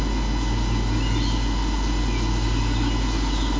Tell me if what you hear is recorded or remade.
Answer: recorded